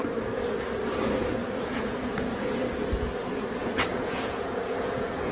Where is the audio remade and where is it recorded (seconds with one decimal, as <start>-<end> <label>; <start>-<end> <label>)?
0.0-1.4 recorded; 1.4-2.5 remade; 2.5-3.6 recorded; 3.6-5.3 remade